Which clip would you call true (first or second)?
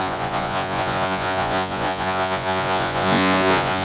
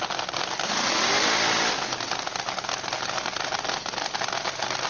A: second